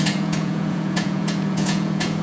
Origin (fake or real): fake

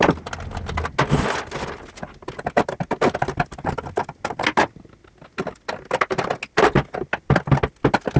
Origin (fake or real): real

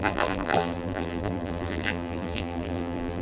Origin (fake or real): fake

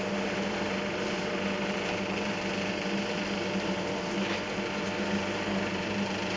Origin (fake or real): fake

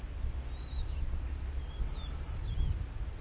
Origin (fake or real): real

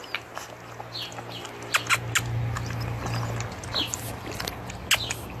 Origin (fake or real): real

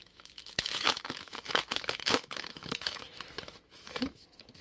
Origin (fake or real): fake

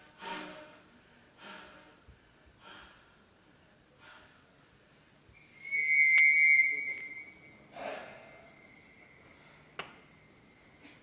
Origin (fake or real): real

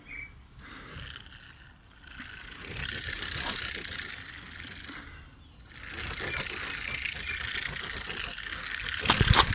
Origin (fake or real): real